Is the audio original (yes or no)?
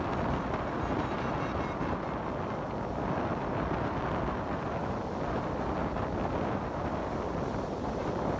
yes